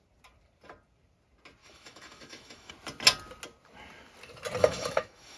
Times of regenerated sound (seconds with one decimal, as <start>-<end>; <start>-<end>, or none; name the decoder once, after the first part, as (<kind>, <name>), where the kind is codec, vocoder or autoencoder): 1.6-2.7 (autoencoder, DAC-VAE); 4.6-5.4